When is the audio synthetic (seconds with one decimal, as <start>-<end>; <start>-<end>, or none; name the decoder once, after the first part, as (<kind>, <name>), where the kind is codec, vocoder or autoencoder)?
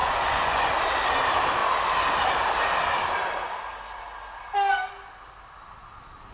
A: 0.0-0.7 (vocoder, Vocos)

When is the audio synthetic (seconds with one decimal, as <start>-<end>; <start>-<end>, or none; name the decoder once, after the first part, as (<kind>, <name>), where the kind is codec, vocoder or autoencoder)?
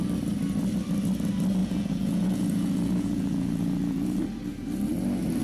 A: 1.6-4.2 (vocoder, Vocos)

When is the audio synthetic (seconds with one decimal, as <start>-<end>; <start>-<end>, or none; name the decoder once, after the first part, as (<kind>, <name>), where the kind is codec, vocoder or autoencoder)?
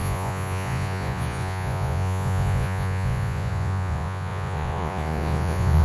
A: 0.0-5.8 (vocoder, Vocos)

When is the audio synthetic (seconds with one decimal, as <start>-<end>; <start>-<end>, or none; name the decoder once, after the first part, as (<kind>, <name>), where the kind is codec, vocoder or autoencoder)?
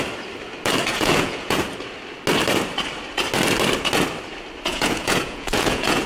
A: 0.9-1.6 (vocoder, Vocos); 4.7-6.1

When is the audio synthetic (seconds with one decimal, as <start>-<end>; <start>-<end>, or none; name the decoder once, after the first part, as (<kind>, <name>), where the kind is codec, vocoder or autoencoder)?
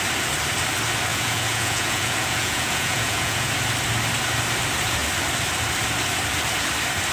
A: 1.1-3.5 (vocoder, Vocos)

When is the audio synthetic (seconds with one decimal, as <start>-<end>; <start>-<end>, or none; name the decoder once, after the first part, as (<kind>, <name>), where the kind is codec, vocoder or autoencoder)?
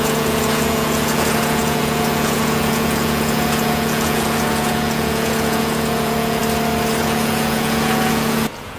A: 0.0-6.4 (vocoder, Vocos); 7.0-8.8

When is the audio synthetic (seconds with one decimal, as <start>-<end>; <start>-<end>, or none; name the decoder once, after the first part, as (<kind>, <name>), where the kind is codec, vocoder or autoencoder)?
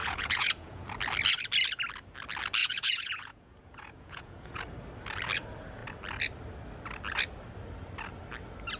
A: 0.0-0.8 (vocoder, Vocos); 2.6-4.6